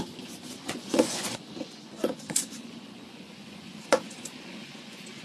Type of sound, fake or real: fake